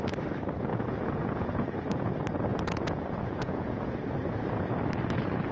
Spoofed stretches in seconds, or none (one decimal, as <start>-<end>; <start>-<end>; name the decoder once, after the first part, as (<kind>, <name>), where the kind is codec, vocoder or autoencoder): 0.7-2.1 (vocoder, Vocos); 2.5-4.0